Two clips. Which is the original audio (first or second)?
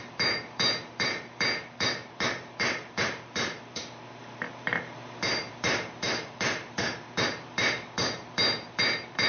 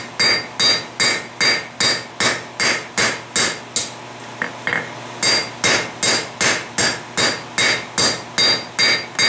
second